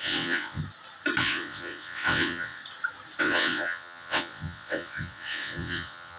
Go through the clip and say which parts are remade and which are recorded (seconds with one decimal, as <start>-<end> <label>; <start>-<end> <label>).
0.0-0.6 remade; 0.6-1.2 recorded; 1.2-2.6 remade; 2.6-3.2 recorded; 3.2-6.2 remade